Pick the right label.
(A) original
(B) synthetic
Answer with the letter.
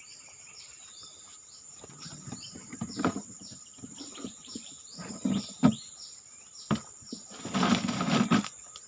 B